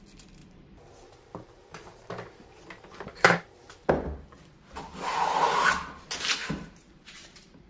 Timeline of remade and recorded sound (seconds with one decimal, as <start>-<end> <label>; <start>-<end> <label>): 0.0-0.4 recorded; 0.4-3.9 remade; 3.9-6.4 recorded; 6.4-7.7 remade